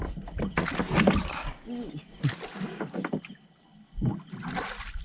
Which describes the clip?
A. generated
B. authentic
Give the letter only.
B